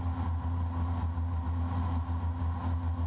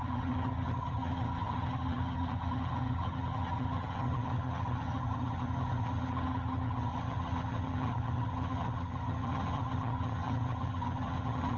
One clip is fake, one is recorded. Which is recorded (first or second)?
first